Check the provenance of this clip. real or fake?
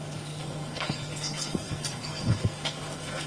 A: fake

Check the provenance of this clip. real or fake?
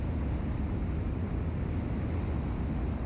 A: real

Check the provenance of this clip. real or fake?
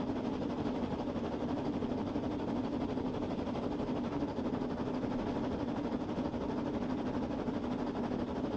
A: real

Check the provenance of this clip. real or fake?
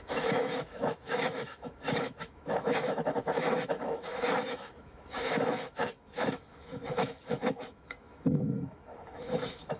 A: fake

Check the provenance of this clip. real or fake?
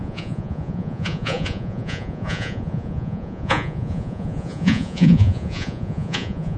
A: fake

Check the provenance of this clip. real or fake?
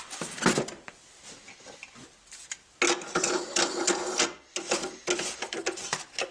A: real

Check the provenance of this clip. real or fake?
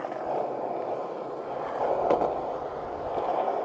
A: real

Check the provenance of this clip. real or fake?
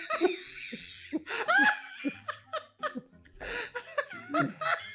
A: fake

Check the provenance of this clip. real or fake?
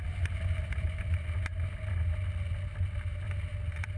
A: real